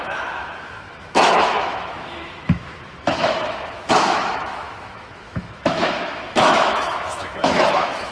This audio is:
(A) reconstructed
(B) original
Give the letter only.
A